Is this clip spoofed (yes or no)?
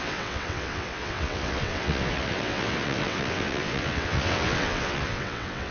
yes